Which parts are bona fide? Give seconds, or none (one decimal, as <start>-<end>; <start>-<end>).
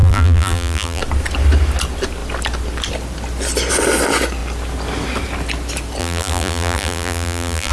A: 1.0-6.0